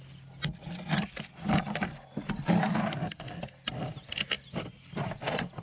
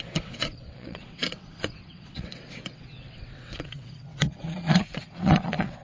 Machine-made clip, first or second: second